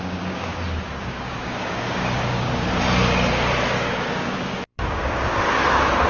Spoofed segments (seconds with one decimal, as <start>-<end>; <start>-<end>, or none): 0.0-0.5; 1.0-2.7; 3.8-5.3